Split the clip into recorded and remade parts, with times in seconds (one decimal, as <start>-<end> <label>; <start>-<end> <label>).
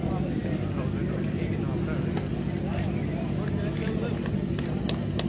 0.0-5.3 recorded